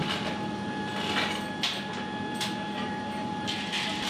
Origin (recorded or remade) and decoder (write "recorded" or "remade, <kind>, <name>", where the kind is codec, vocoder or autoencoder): recorded